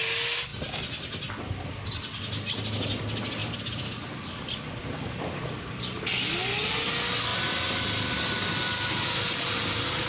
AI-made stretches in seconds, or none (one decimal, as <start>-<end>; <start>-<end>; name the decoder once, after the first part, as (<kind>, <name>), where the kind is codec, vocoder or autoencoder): 3.4-5.3 (vocoder, BigVGAN v2)